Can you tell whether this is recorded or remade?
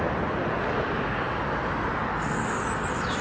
recorded